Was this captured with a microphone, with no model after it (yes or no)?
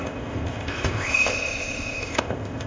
no